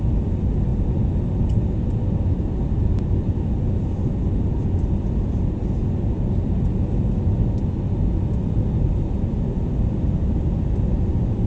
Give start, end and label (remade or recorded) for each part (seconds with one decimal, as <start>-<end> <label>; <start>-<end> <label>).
0.0-11.5 recorded